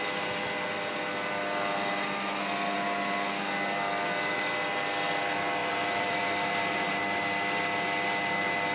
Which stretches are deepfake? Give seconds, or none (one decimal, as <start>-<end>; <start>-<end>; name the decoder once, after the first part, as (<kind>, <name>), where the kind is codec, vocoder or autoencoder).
5.6-7.0 (vocoder, BigVGAN v2)